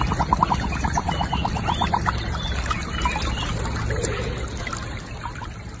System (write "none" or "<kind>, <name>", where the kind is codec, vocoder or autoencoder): none